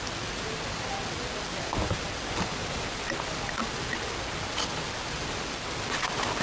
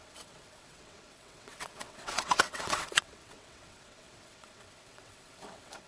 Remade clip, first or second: second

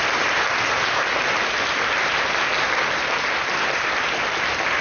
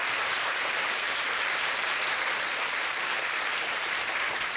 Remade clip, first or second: second